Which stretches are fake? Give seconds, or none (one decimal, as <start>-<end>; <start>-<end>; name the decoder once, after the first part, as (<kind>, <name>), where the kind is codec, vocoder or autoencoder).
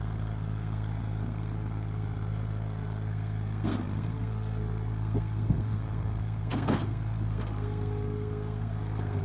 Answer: 0.0-9.2 (codec, SNAC)